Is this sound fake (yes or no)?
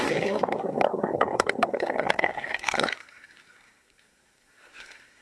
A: yes